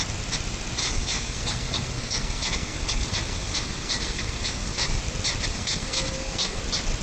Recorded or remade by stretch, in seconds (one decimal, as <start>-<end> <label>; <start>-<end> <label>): 0.0-0.8 recorded; 0.8-5.0 remade; 5.0-5.5 recorded; 5.5-6.6 remade; 6.6-7.0 recorded